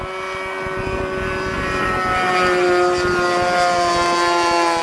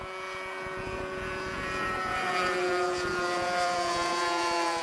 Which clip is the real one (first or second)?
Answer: first